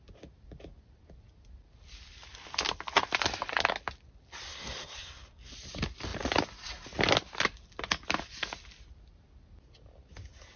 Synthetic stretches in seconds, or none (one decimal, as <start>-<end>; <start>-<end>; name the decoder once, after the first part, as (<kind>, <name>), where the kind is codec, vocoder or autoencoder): 4.5-5.5 (codec, SNAC)